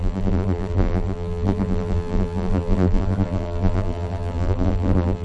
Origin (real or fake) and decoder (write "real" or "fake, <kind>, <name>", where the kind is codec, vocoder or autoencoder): fake, vocoder, BigVGAN v2